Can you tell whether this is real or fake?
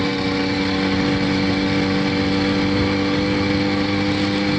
real